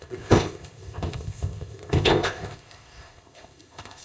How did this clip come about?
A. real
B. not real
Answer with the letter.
B